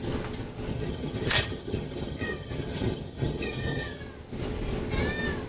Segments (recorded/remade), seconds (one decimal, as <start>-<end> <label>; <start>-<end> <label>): 0.0-0.7 recorded; 0.7-4.0 remade; 4.0-5.5 recorded